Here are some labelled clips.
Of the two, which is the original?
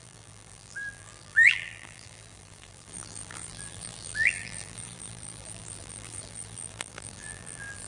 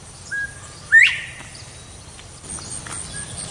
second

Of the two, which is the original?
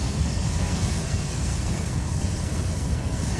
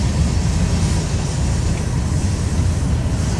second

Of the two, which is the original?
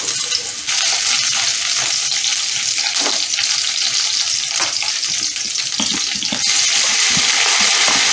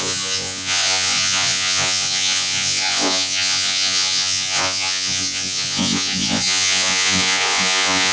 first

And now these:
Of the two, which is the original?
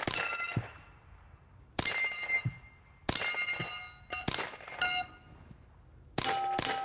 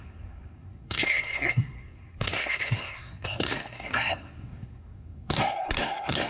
first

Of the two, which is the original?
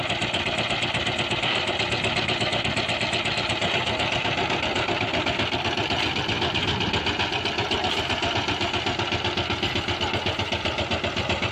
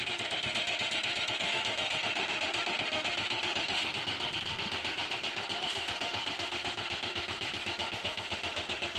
first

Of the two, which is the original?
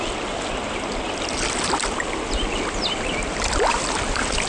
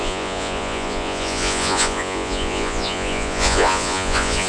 first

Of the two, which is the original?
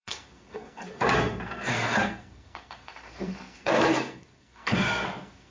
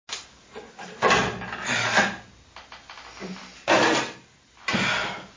second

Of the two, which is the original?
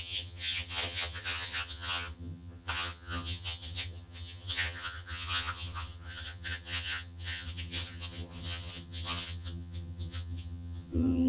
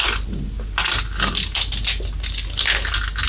second